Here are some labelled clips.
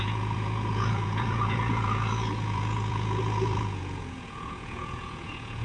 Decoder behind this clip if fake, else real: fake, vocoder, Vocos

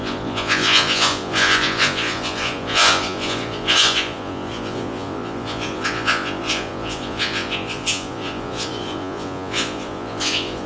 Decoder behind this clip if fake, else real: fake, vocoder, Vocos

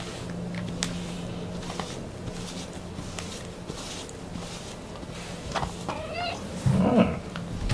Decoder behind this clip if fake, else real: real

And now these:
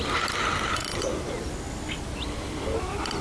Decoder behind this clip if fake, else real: real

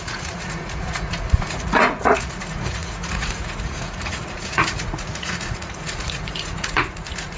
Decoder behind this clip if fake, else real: fake, vocoder, Vocos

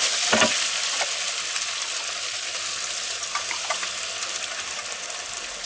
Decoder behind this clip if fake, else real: real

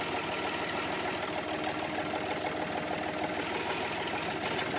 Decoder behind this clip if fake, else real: real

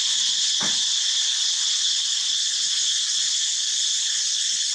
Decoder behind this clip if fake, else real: real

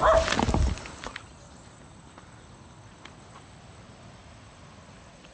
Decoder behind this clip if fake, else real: real